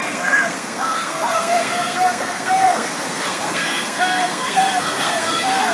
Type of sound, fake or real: fake